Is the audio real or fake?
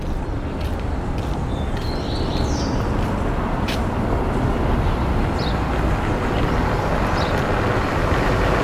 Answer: real